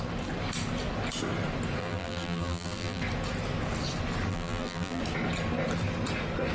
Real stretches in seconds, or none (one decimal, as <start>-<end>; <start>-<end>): 0.0-1.8; 3.0-4.3; 5.0-6.5